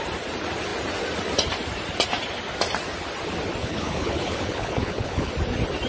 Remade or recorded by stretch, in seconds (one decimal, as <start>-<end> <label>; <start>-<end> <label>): 0.0-3.6 recorded; 3.6-5.3 remade; 5.3-5.9 recorded